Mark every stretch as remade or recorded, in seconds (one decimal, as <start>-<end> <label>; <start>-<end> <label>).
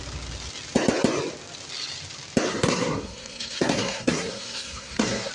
0.0-2.5 recorded; 2.5-5.3 remade